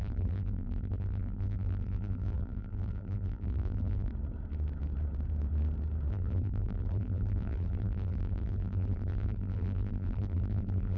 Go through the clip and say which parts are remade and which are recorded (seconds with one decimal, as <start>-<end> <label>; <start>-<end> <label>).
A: 0.0-4.1 remade; 4.1-6.1 recorded; 6.1-11.0 remade